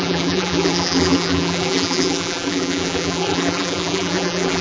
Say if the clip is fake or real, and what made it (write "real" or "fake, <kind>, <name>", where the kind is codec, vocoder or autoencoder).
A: fake, vocoder, BigVGAN v2